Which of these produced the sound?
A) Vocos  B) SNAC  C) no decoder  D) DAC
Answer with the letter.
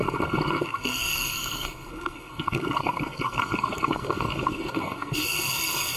B